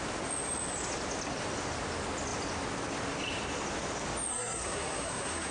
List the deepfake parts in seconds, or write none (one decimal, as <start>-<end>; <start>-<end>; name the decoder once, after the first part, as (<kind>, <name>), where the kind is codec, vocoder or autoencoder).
4.3-5.5 (codec, SNAC)